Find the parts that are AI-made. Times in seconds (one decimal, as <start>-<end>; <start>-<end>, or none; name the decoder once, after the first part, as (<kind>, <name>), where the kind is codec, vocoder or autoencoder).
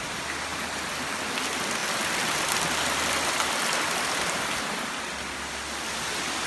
none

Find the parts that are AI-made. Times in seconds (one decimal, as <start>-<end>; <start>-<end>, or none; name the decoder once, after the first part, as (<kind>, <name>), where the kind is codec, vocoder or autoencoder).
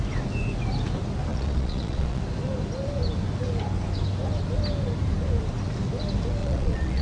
1.3-2.2 (vocoder, Vocos); 6.4-7.0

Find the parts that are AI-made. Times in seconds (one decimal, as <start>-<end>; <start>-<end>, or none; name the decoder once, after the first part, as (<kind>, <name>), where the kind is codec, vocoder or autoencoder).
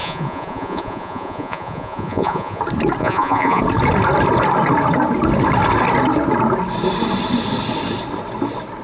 0.0-2.6 (vocoder, Vocos); 3.0-3.6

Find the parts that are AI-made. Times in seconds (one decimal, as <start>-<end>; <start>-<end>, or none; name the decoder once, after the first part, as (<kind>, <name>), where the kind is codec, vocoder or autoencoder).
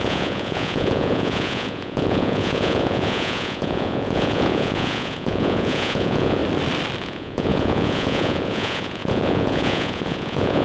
0.0-6.4 (vocoder, Vocos); 7.0-10.6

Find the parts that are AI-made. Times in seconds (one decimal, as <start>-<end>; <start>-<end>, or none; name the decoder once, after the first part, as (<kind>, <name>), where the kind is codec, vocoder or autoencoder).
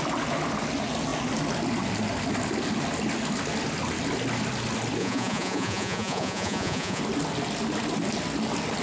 5.0-7.0 (vocoder, Vocos)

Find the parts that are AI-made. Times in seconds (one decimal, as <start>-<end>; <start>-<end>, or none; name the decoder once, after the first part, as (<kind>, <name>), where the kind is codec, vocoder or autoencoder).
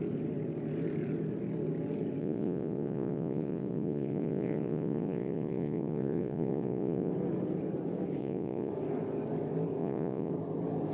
2.2-7.1 (vocoder, Vocos); 8.2-8.7; 9.8-10.3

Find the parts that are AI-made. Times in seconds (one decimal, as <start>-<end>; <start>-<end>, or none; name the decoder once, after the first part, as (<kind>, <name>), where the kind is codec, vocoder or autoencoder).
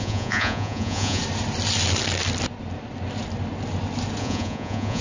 0.0-1.2 (vocoder, Vocos); 4.2-5.0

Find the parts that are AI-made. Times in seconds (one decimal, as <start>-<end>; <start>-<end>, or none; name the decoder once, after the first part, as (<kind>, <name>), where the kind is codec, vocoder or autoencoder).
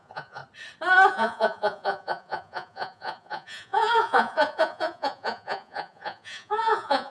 0.0-0.4 (vocoder, Vocos); 1.1-7.1